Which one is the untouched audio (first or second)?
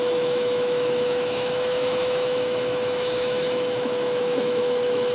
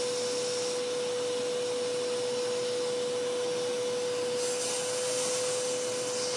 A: second